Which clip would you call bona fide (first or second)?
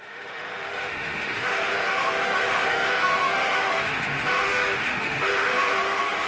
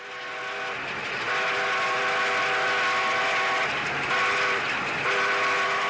second